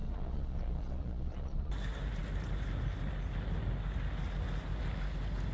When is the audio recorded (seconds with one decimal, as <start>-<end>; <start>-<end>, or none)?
1.7-5.5